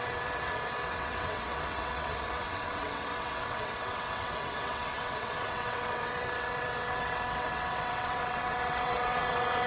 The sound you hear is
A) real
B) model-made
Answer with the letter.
B